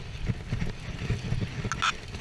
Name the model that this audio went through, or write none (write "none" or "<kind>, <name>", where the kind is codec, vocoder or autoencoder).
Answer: none